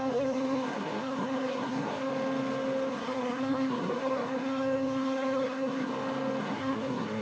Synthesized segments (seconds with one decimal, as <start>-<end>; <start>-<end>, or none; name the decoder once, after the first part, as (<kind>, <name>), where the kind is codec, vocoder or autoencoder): 0.0-2.1 (codec, SNAC); 2.9-5.9; 6.4-7.2